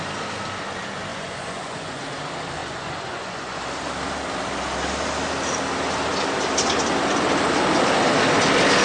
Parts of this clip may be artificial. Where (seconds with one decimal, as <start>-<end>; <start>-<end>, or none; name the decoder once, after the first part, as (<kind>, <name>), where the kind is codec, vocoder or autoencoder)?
1.1-2.0 (vocoder, Vocos); 2.6-3.6